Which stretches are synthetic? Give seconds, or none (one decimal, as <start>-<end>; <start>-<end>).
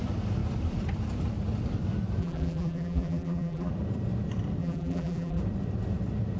2.2-3.7; 4.6-5.4